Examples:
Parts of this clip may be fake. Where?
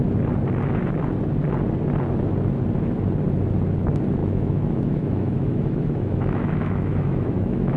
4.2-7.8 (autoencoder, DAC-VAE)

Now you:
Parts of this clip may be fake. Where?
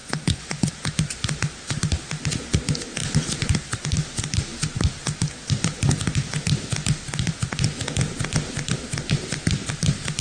0.0-0.7 (vocoder, Vocos)